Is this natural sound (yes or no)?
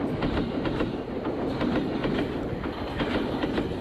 no